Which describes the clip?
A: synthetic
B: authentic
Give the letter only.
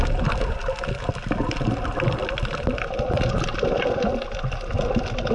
B